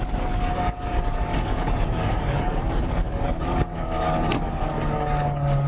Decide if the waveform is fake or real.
fake